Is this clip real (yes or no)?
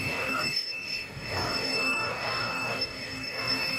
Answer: no